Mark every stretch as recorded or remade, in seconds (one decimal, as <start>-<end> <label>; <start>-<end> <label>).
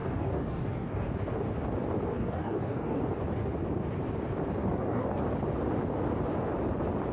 0.0-1.1 remade; 1.1-2.1 recorded; 2.1-3.0 remade; 3.0-4.6 recorded; 4.6-5.2 remade; 5.2-7.1 recorded